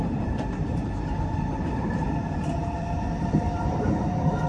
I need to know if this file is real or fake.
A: fake